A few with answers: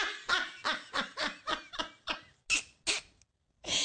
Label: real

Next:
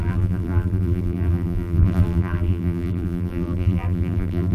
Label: fake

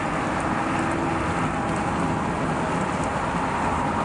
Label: real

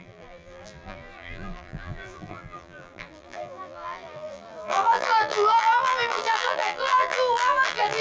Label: fake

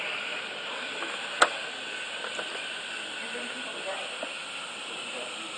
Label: real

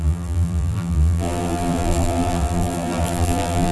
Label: fake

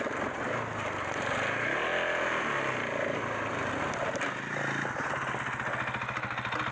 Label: real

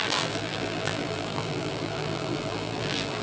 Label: fake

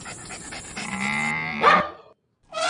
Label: real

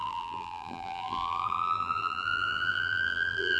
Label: fake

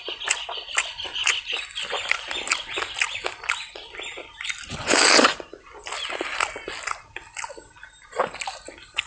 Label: real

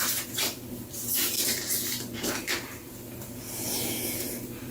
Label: fake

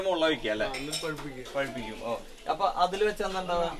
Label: real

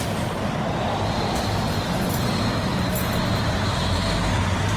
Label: real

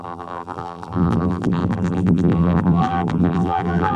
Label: fake